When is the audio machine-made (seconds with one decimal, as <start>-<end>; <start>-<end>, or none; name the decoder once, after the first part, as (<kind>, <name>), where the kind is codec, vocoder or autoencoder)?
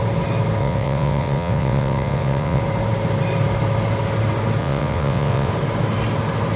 0.6-2.6 (vocoder, WaveNeXt); 4.6-5.5